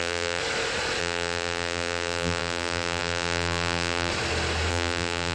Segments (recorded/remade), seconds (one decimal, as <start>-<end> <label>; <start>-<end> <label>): 0.0-0.4 remade; 0.4-1.0 recorded; 1.0-4.1 remade; 4.1-4.7 recorded; 4.7-5.3 remade